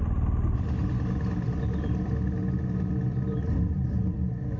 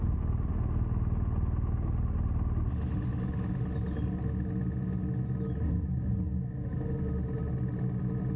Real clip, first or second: second